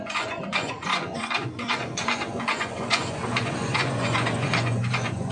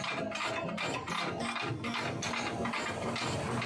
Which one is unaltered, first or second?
second